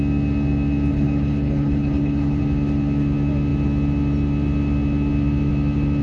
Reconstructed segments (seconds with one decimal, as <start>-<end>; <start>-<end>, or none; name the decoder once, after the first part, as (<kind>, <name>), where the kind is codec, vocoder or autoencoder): 0.9-2.4 (codec, HILCodec)